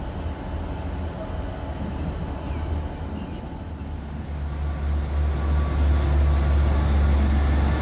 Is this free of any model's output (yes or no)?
yes